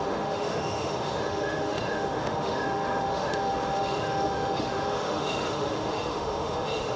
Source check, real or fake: fake